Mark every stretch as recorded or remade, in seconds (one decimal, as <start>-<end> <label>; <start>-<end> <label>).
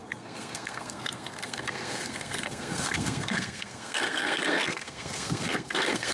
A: 0.0-6.1 remade